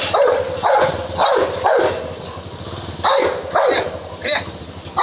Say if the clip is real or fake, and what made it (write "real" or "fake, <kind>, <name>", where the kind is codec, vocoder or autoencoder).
real